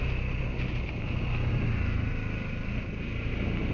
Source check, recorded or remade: recorded